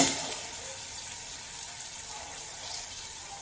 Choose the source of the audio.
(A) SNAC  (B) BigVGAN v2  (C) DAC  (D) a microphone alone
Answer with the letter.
D